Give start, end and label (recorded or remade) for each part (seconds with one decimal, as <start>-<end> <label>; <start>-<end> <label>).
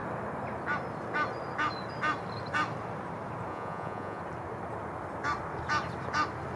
0.0-3.5 recorded; 3.5-4.2 remade; 4.2-6.6 recorded